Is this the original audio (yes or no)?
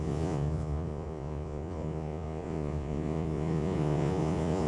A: no